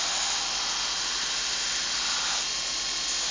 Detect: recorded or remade recorded